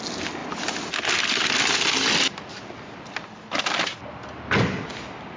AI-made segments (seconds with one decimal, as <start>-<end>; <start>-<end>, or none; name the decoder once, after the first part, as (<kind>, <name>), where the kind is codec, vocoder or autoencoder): none

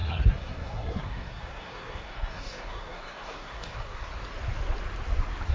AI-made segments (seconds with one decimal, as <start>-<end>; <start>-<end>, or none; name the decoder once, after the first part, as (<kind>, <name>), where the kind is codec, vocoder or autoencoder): 0.0-4.1 (codec, SNAC)

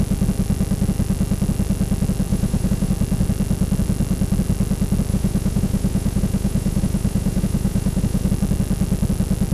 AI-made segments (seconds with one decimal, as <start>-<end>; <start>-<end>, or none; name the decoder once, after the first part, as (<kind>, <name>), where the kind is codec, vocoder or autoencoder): 2.3-2.9 (vocoder, Vocos); 5.1-8.3

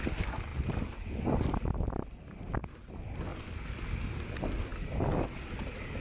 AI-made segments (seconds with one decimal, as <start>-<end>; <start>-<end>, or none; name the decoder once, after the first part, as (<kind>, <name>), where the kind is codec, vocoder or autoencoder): none

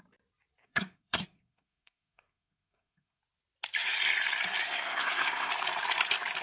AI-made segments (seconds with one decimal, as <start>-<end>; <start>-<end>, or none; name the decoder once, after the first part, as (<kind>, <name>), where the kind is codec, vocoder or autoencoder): 0.6-3.2 (codec, SNAC); 4.6-5.5